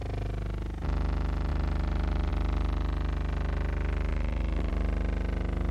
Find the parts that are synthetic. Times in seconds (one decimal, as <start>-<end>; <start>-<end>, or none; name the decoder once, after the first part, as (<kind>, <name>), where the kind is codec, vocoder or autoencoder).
1.5-2.3 (vocoder, BigVGAN v2); 4.1-4.7